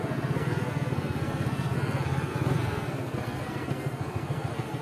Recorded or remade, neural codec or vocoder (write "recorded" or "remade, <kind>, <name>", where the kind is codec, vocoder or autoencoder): remade, codec, SNAC